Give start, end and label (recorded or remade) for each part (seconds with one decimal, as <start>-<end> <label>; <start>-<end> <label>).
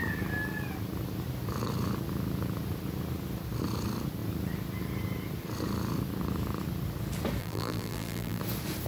0.0-7.4 recorded; 7.4-8.4 remade; 8.4-8.9 recorded